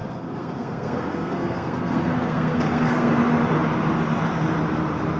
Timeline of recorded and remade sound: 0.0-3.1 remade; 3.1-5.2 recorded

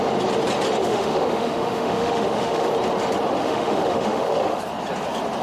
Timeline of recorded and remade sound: 0.0-0.8 recorded; 0.8-2.7 remade; 2.7-3.4 recorded; 3.4-4.6 remade; 4.6-5.4 recorded

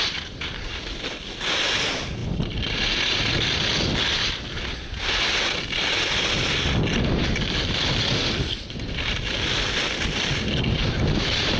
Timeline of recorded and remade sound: 0.0-11.6 recorded

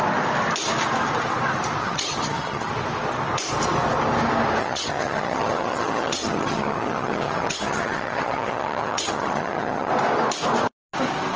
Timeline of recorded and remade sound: 0.0-1.8 recorded; 1.8-2.7 remade; 2.7-4.6 recorded; 4.6-9.9 remade; 9.9-11.4 recorded

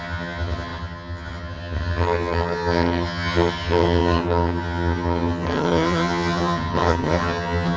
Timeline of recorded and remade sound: 0.0-7.8 remade

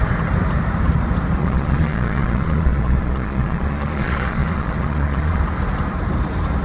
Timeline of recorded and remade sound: 0.0-1.4 recorded; 1.4-5.4 remade; 5.4-6.6 recorded

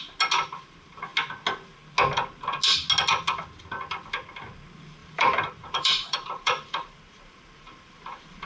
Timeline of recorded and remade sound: 0.0-5.0 recorded; 5.0-8.5 remade